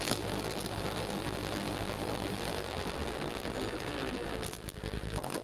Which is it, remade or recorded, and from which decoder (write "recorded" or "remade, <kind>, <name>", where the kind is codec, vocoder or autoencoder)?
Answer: remade, vocoder, BigVGAN v2